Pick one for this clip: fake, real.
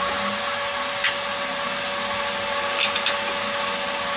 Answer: real